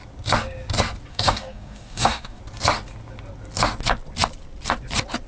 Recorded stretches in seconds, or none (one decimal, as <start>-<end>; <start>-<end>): 0.0-1.1; 2.4-5.3

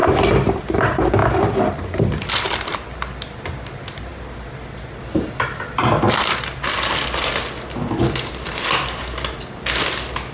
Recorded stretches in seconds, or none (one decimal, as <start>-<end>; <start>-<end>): 0.6-1.2; 2.3-10.3

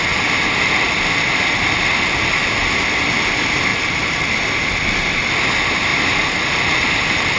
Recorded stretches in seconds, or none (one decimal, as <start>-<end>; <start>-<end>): 0.0-3.7; 4.2-5.9

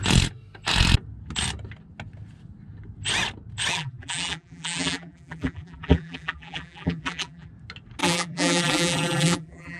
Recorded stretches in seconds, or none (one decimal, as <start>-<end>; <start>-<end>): 0.0-3.7; 7.5-8.0

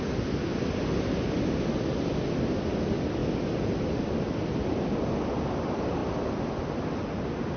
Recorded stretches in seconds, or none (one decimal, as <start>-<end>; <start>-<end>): 0.0-0.5; 1.4-7.6